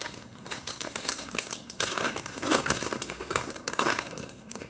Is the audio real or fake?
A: fake